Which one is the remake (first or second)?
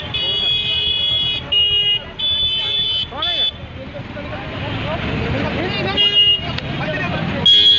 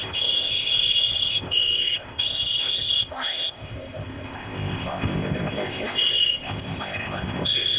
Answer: second